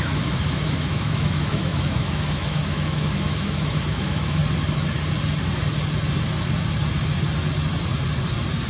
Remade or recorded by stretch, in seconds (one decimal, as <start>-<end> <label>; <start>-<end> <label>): 0.0-4.4 remade; 4.4-8.7 recorded